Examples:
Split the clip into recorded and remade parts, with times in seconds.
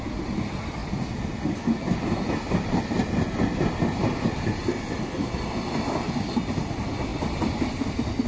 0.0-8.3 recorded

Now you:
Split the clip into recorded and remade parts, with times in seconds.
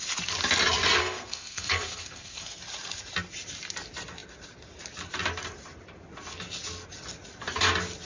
0.0-1.0 recorded; 1.0-2.6 remade; 2.6-8.0 recorded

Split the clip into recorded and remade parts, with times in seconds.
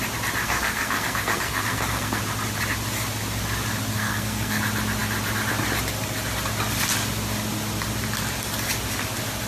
0.0-0.4 recorded; 0.4-2.2 remade; 2.2-3.9 recorded; 3.9-4.6 remade; 4.6-9.5 recorded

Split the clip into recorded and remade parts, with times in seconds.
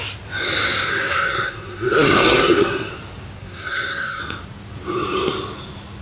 0.0-0.9 recorded; 0.9-2.9 remade; 2.9-3.4 recorded; 3.4-4.2 remade; 4.2-6.0 recorded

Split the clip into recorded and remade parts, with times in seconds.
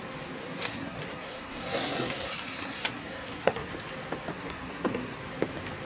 0.0-0.4 recorded; 0.4-3.7 remade; 3.7-4.3 recorded; 4.3-5.2 remade; 5.2-5.8 recorded